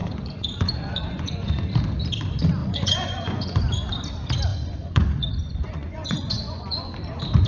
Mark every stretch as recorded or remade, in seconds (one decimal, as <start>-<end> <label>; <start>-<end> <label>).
0.0-1.7 remade; 1.7-2.6 recorded; 2.6-3.6 remade; 3.6-4.5 recorded; 4.5-6.9 remade; 6.9-7.5 recorded